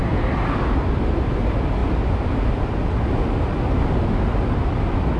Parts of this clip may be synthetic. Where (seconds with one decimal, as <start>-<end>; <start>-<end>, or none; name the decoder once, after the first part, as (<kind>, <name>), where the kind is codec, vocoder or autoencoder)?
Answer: none